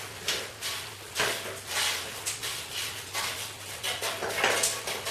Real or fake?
real